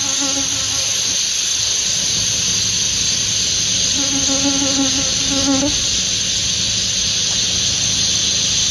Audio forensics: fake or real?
real